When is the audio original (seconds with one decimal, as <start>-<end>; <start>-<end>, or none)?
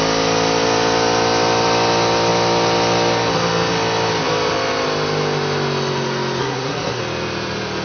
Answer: 0.0-6.4; 7.0-7.8